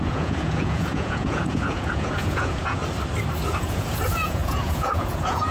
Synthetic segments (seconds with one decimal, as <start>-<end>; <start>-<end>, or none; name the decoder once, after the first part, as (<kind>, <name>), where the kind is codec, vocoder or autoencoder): 0.0-2.8 (vocoder, Vocos); 3.5-5.5